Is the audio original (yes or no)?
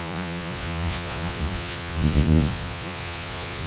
no